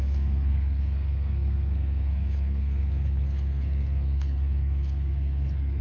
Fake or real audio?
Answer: fake